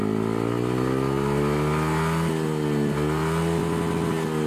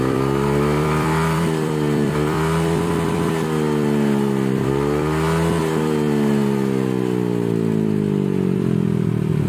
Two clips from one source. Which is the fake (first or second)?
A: second